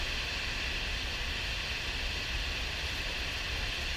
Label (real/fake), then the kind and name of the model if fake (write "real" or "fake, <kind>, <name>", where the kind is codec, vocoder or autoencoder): real